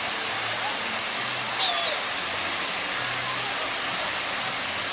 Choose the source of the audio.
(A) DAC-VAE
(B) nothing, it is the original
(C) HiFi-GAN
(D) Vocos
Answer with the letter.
B